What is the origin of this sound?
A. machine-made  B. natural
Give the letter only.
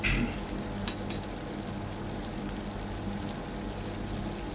B